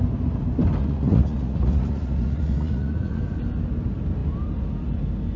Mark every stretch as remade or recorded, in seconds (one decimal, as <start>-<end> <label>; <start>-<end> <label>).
0.0-0.8 recorded; 0.8-3.2 remade; 3.2-5.4 recorded